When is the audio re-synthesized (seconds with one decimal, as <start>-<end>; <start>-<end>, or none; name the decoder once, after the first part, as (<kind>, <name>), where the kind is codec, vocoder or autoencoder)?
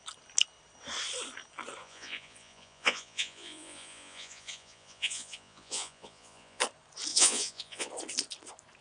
1.8-6.6 (vocoder, Vocos); 7.1-7.9